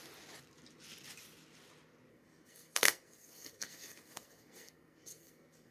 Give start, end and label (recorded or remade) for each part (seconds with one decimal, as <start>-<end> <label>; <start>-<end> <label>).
0.0-2.1 recorded; 2.1-5.7 remade